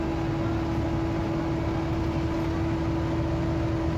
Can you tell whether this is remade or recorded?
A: recorded